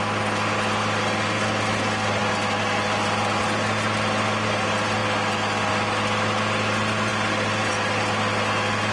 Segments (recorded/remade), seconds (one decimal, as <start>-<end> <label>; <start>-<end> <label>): 0.0-8.9 recorded